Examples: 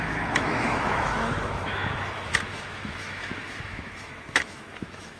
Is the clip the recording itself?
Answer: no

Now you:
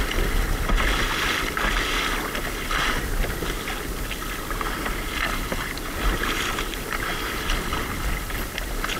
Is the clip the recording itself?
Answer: yes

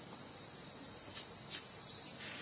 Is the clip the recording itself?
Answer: yes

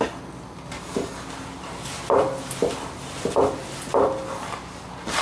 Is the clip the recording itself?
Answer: yes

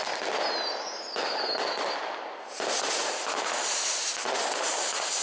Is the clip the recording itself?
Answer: yes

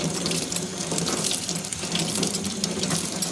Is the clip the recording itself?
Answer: no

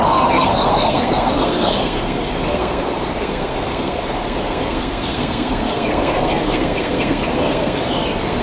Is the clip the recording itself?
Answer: no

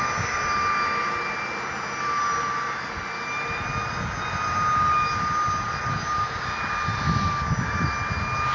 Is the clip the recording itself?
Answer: yes